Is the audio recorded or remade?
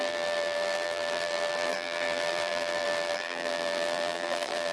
remade